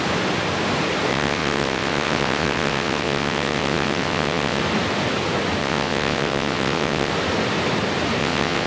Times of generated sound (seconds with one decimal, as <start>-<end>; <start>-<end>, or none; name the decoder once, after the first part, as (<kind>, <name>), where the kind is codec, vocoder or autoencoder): 1.1-4.6 (vocoder, WaveNeXt); 5.6-7.1; 8.2-8.7